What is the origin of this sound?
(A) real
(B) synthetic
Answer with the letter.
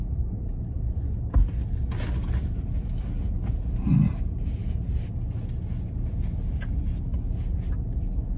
A